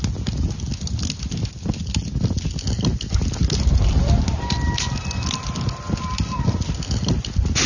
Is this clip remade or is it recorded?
recorded